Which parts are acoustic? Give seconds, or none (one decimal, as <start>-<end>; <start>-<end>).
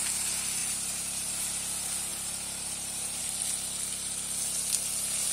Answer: 0.0-0.6; 1.3-2.1; 3.2-5.3